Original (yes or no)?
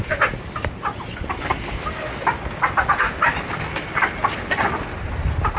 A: yes